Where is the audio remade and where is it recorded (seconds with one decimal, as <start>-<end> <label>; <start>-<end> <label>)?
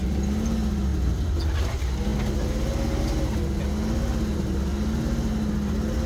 0.0-6.1 recorded